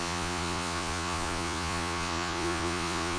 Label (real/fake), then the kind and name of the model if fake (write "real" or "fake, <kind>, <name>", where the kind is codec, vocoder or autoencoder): fake, vocoder, Vocos